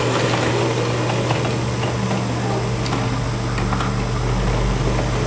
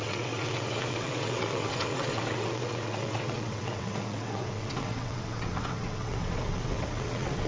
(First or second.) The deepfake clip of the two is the second